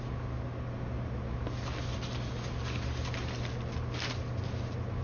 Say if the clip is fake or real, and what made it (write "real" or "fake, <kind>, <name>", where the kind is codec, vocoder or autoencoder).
real